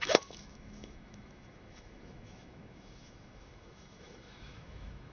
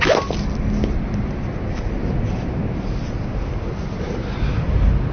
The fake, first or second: first